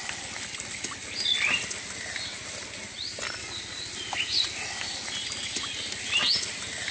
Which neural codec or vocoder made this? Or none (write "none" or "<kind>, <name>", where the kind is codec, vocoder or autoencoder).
none